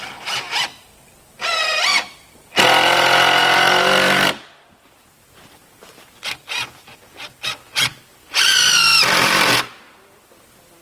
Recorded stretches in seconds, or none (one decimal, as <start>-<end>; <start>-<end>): 0.0-3.4; 4.3-7.9